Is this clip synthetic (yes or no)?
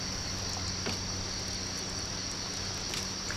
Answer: no